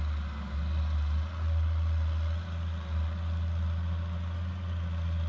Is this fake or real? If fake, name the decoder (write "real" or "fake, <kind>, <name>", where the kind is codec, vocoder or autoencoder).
real